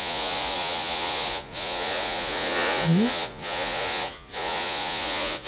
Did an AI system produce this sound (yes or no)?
yes